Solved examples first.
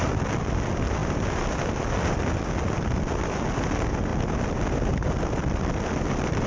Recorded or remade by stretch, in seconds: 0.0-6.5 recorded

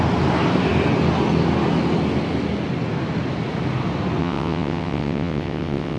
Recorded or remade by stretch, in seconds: 0.0-4.2 recorded; 4.2-6.0 remade

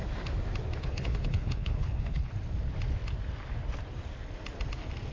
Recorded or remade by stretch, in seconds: 0.0-0.8 recorded; 0.8-2.3 remade; 2.3-5.1 recorded

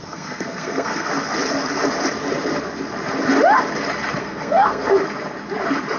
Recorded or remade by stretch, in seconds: 0.0-1.1 remade; 1.1-4.2 recorded; 4.2-5.0 remade; 5.0-6.0 recorded

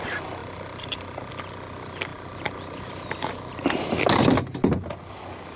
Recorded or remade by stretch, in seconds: 0.0-5.6 recorded